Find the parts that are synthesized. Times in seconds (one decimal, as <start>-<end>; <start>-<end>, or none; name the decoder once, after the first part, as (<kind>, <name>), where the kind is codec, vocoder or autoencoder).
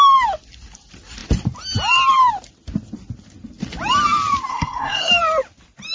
4.5-5.1 (codec, SNAC)